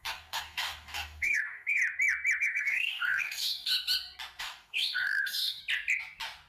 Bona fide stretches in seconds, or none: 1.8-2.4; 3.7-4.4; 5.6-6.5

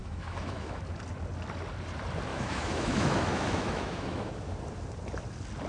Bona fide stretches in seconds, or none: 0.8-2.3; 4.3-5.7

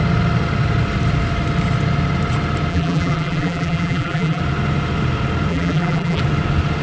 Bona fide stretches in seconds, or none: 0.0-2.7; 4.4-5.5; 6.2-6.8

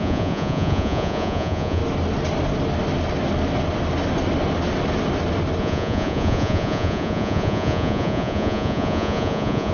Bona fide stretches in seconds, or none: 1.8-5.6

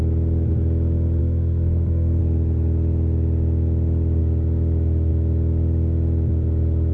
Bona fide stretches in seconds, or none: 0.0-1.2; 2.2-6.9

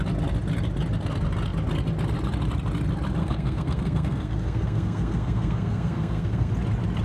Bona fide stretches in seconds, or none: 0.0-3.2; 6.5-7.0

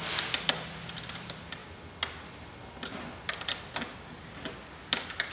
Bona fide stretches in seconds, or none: 0.0-5.3